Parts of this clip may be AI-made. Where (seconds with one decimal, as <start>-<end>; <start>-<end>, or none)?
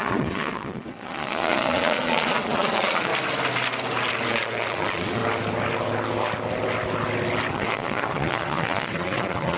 0.0-3.1; 4.3-5.2; 7.5-9.6